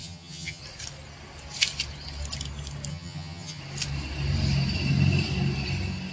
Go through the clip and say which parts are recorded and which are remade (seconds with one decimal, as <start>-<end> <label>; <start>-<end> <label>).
0.0-0.6 remade; 0.6-2.9 recorded; 2.9-3.6 remade; 3.6-6.1 recorded